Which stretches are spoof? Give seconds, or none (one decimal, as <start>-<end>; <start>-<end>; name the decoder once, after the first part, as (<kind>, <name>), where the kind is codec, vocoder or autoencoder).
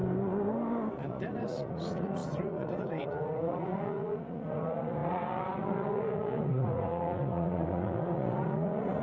0.9-9.0 (vocoder, Vocos)